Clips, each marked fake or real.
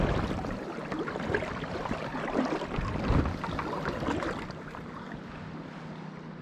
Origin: real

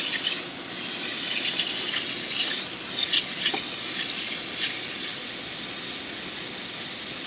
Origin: real